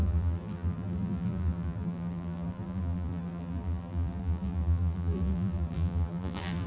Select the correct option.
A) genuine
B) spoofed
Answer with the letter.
B